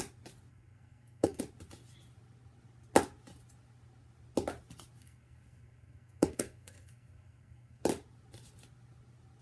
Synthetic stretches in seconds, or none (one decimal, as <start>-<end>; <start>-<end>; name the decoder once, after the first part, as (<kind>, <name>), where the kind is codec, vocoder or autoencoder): 0.5-1.4 (codec, SNAC); 5.0-7.8